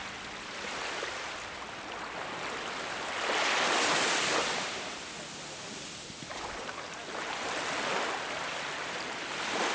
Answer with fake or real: real